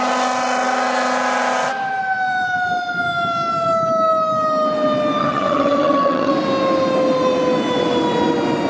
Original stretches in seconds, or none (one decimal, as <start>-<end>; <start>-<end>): 0.0-5.2; 6.3-8.7